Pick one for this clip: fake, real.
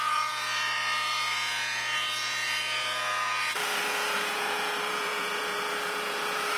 fake